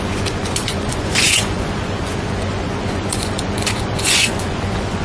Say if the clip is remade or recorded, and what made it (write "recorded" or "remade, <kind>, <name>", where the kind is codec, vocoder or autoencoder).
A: remade, vocoder, Vocos